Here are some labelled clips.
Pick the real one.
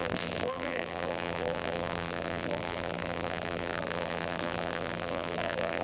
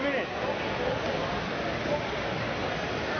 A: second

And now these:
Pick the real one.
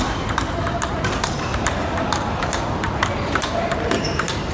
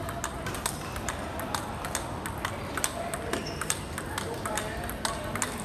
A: second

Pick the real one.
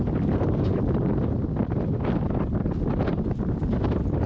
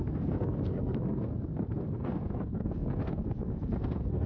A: first